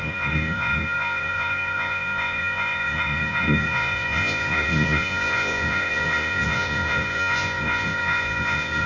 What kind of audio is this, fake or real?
fake